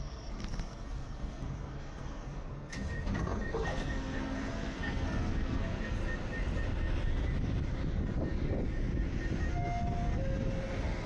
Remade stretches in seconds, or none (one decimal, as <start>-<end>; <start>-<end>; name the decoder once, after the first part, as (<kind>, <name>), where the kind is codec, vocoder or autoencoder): 0.0-6.0 (codec, SNAC); 9.4-10.2